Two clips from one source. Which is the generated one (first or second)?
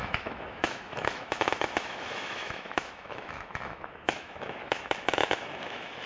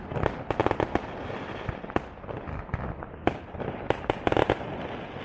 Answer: first